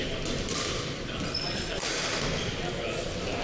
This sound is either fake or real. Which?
real